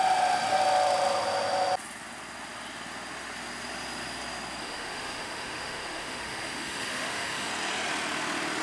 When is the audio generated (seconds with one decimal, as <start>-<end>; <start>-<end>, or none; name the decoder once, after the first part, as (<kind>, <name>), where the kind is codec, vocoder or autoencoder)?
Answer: 4.6-7.5 (autoencoder, DAC-VAE)